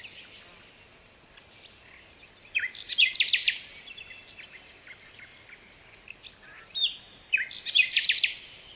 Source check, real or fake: real